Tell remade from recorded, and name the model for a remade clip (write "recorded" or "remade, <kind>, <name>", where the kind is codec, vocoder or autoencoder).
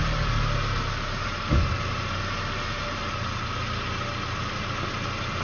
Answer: recorded